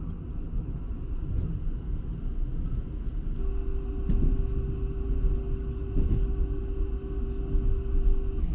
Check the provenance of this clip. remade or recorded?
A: recorded